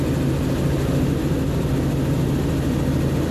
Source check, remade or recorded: recorded